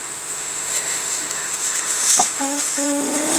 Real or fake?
fake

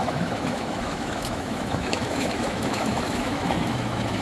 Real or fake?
fake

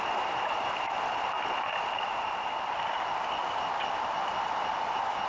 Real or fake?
real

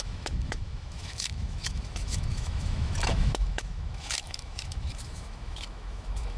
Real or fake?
fake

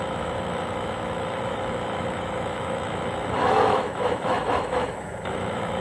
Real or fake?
fake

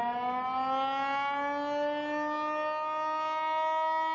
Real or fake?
real